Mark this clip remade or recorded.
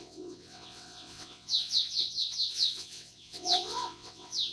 remade